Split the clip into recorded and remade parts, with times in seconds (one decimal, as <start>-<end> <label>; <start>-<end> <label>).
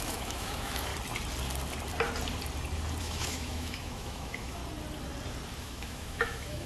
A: 0.0-0.9 remade; 0.9-3.0 recorded; 3.0-4.6 remade; 4.6-5.6 recorded; 5.6-6.7 remade